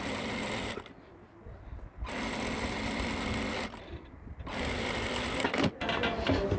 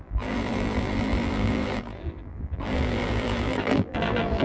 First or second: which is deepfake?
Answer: second